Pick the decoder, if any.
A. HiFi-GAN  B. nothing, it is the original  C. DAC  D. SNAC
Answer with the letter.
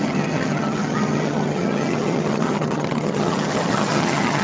A